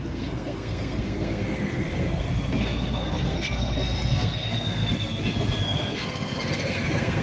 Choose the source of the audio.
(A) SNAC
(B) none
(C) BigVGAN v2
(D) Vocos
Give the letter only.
A